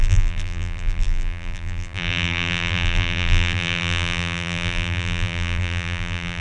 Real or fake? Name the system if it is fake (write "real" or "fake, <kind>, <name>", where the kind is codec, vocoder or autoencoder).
fake, vocoder, BigVGAN v2